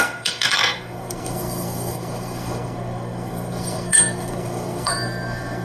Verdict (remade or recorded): remade